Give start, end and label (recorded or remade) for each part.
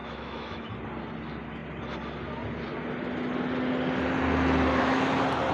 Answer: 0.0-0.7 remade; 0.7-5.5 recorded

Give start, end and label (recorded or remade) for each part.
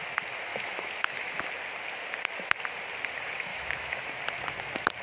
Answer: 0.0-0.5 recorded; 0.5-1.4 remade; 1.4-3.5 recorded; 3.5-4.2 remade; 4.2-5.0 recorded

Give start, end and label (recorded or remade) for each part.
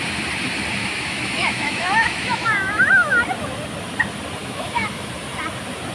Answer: 0.0-0.8 recorded; 0.8-3.2 remade; 3.2-4.4 recorded; 4.4-5.1 remade; 5.1-5.9 recorded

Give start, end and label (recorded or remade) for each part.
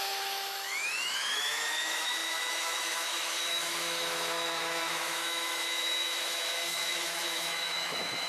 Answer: 0.0-8.3 remade